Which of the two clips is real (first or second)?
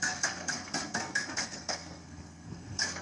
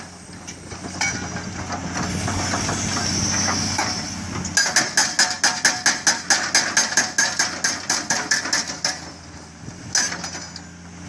second